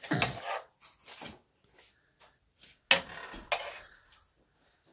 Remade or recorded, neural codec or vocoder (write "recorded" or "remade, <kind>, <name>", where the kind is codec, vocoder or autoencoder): recorded